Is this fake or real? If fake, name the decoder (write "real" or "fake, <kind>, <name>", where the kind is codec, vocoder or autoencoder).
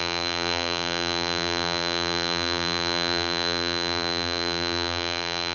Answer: fake, vocoder, BigVGAN v2